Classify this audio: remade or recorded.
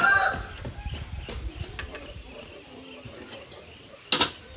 recorded